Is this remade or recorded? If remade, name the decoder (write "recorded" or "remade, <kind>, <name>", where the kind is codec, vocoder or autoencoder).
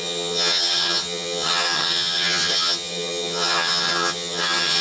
remade, vocoder, HiFi-GAN